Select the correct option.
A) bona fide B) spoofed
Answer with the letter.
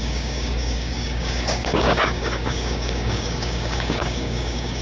B